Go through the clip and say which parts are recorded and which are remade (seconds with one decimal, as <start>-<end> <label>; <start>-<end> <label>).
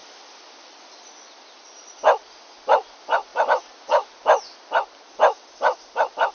0.0-2.2 remade; 2.2-3.3 recorded; 3.3-4.7 remade; 4.7-6.3 recorded